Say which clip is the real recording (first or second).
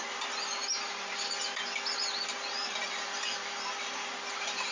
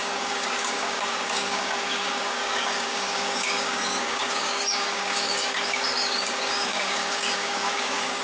first